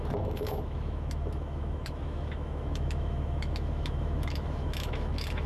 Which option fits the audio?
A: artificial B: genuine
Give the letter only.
A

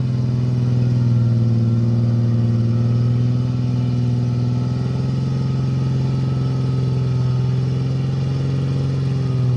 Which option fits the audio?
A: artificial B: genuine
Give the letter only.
B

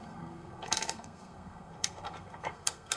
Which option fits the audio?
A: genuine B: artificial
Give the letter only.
B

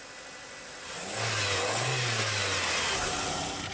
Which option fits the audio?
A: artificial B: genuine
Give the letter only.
B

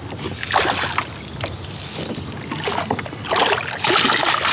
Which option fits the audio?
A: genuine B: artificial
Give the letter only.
A